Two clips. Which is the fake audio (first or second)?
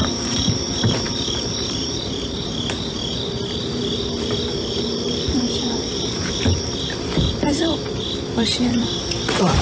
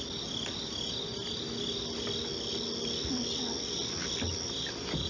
first